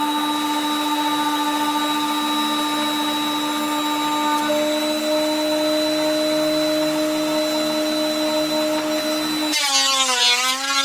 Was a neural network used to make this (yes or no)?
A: no